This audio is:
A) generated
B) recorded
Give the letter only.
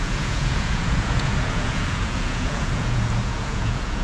A